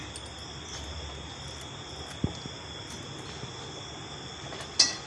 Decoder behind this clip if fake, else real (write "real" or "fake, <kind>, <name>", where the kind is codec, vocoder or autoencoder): real